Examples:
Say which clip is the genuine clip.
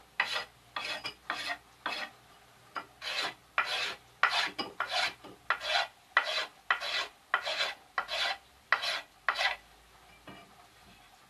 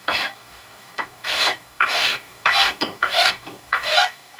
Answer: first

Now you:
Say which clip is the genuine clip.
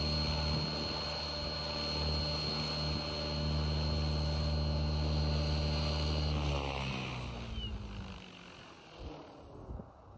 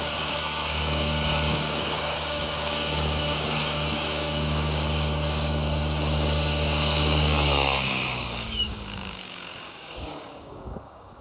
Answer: first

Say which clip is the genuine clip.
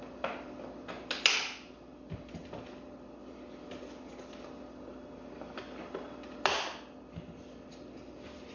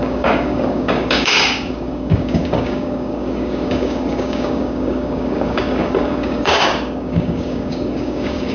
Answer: first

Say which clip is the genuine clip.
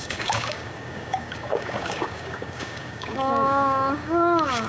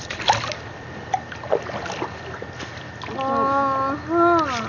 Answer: second